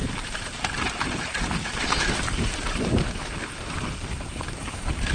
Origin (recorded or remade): remade